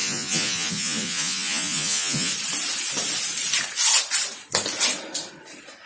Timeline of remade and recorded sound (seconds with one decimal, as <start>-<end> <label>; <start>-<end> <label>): 0.0-2.3 remade; 2.3-5.9 recorded